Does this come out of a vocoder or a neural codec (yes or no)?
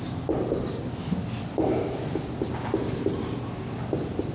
no